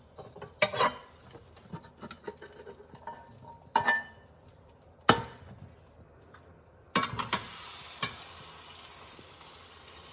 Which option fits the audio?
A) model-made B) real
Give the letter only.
B